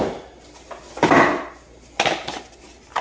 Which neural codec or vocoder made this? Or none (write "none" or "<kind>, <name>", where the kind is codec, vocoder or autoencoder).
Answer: none